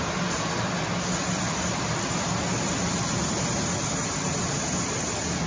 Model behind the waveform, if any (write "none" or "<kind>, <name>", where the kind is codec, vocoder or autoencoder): none